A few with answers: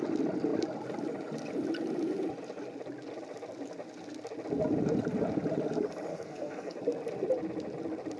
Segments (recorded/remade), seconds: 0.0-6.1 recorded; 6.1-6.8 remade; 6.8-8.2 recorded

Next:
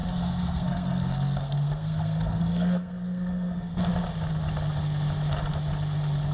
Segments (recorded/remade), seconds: 0.0-3.8 remade; 3.8-6.3 recorded